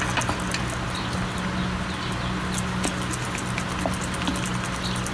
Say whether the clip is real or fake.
real